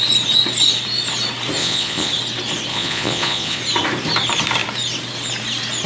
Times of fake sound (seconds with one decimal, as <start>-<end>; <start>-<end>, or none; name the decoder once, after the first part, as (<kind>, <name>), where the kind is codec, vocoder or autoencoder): 1.6-2.1 (vocoder, Vocos); 2.7-3.6